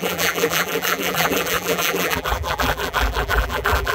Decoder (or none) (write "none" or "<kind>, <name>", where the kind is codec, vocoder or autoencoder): vocoder, BigVGAN v2